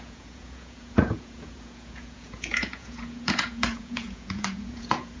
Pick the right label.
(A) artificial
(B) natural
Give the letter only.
A